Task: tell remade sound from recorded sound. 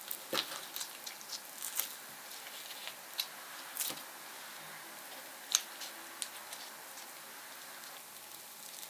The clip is recorded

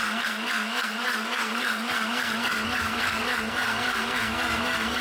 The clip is remade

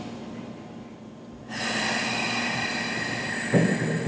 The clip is recorded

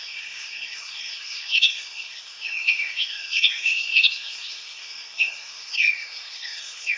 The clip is remade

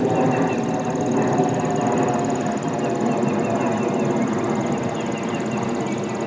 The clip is recorded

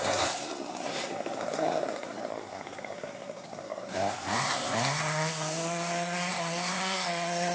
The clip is remade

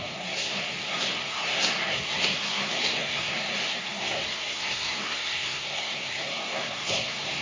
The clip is remade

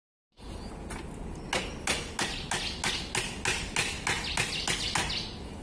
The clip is recorded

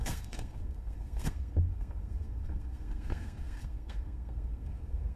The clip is remade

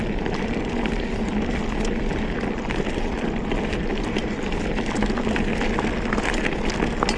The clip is recorded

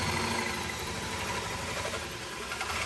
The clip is recorded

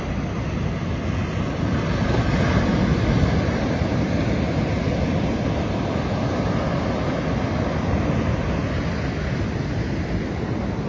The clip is recorded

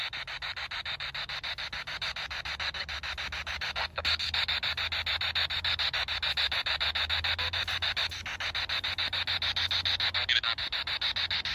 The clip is recorded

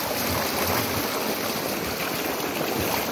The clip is recorded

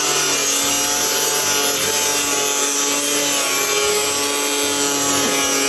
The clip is recorded